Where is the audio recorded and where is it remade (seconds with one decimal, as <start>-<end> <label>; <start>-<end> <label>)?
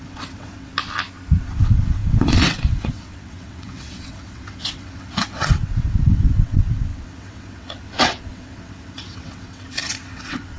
0.0-0.7 remade; 0.7-1.4 recorded; 1.4-10.6 remade